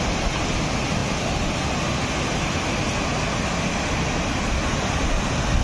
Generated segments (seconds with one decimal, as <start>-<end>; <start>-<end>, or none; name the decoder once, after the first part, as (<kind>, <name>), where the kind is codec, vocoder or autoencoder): none